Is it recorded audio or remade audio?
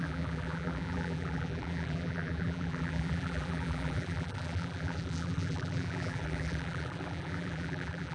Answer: remade